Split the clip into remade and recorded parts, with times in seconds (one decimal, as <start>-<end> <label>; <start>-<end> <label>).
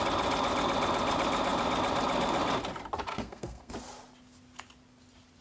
0.0-3.1 recorded; 3.1-3.7 remade; 3.7-5.4 recorded